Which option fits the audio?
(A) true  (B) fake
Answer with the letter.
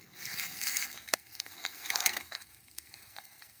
B